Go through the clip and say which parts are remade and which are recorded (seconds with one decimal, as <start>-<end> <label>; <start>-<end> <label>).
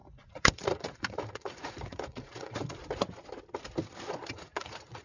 0.0-2.8 remade; 2.8-4.3 recorded; 4.3-5.0 remade